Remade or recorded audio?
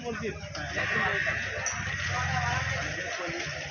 recorded